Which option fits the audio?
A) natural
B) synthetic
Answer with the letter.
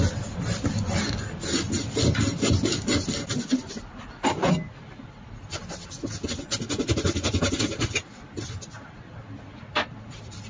A